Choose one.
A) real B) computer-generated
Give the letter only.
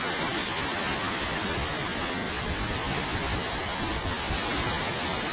A